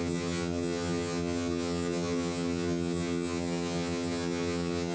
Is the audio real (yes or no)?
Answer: no